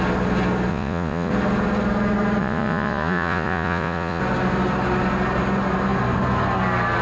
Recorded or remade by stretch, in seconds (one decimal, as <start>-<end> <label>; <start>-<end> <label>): 0.0-0.7 recorded; 0.7-1.3 remade; 1.3-2.4 recorded; 2.4-4.2 remade; 4.2-7.0 recorded